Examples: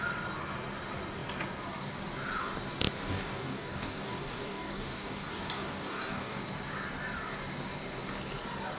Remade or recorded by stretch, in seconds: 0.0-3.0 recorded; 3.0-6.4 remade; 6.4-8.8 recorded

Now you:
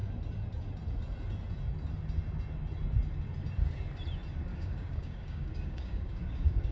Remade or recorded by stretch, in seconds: 0.0-4.5 recorded; 4.5-6.7 remade